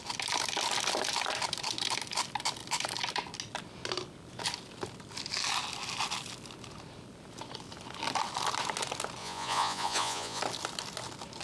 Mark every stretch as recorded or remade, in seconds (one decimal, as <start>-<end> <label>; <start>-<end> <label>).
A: 0.0-9.2 recorded; 9.2-10.4 remade; 10.4-11.4 recorded